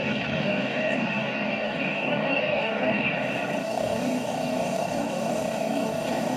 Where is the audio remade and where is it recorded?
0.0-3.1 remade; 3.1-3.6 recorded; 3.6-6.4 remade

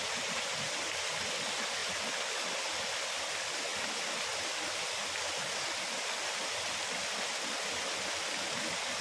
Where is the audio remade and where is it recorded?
0.0-9.0 recorded